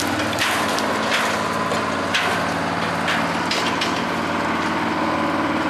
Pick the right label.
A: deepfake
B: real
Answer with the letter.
B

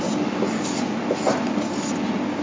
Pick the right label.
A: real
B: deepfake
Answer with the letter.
A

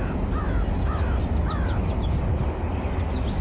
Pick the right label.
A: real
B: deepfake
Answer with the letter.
A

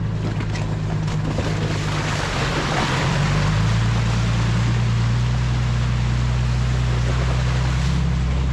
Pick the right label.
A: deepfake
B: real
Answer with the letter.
B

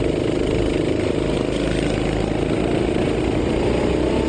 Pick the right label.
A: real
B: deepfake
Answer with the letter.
A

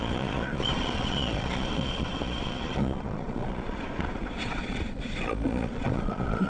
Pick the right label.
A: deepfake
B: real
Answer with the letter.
A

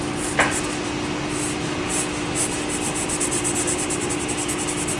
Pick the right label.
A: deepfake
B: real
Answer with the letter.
B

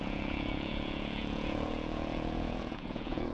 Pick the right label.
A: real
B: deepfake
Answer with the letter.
B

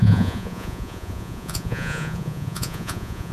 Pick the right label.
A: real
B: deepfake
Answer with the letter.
B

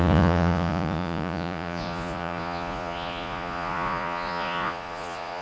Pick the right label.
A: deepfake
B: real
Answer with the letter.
A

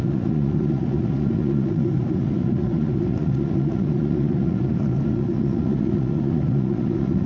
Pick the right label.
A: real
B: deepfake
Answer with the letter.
B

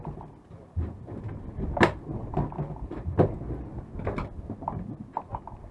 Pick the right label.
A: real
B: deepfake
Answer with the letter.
A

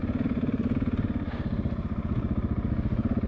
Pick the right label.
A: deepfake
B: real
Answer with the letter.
B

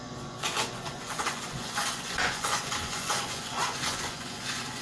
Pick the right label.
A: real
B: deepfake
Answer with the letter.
B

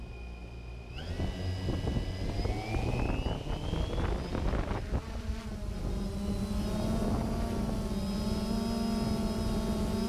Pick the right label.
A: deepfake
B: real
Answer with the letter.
B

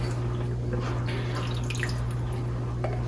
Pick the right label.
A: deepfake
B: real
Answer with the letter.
B